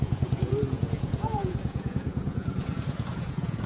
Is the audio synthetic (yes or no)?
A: yes